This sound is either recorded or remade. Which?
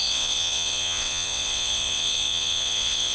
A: remade